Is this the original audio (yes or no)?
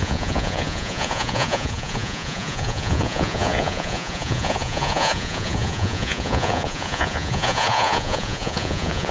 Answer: no